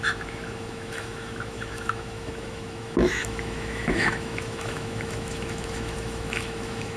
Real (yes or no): no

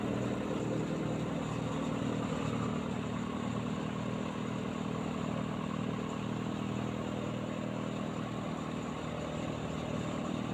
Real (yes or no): yes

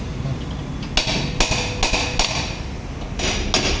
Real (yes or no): yes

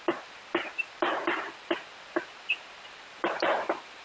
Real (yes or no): yes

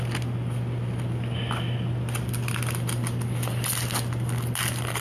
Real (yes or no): yes